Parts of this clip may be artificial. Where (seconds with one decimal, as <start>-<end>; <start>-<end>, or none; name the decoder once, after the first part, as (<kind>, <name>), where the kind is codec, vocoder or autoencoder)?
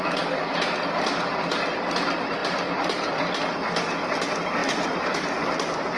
2.4-3.4 (vocoder, BigVGAN v2); 4.6-6.0